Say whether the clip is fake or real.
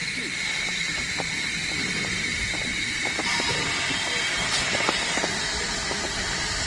real